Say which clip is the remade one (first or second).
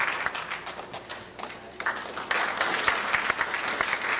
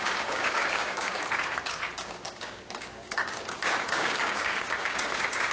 second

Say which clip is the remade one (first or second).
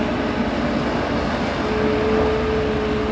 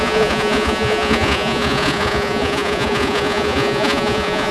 second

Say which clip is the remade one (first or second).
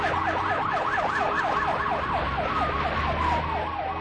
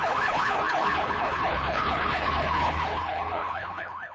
second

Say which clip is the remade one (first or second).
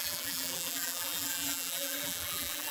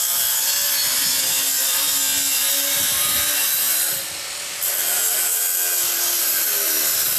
first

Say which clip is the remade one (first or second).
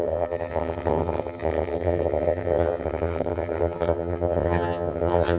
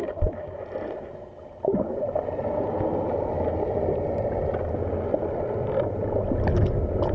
first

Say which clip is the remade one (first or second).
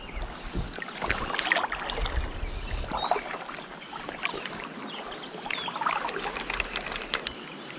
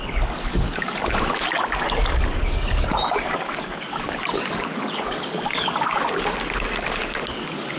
second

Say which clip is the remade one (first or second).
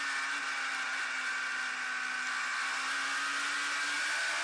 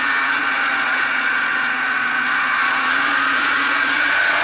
second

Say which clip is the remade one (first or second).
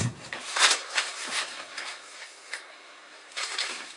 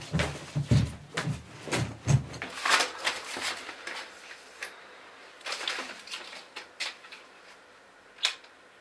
first